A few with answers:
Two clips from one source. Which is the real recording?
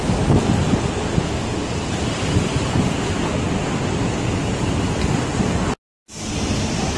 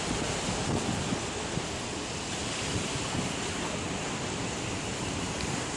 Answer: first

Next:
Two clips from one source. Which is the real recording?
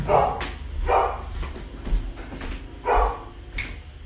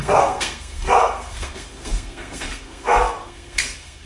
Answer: first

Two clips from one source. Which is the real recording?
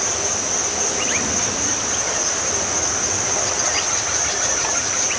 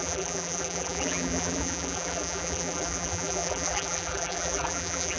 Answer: first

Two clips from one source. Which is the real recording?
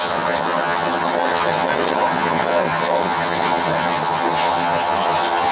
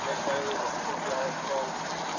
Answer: second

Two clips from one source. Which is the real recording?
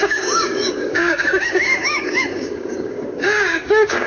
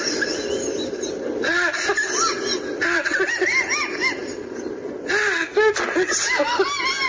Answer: second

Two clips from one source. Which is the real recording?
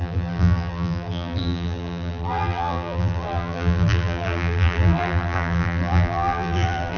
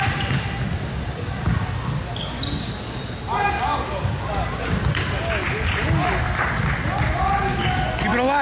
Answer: second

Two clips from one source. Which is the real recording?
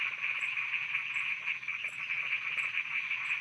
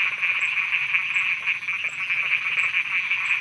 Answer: second